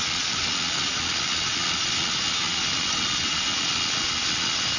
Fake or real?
fake